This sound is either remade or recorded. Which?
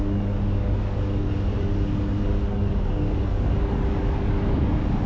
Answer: remade